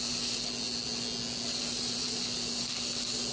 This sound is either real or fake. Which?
real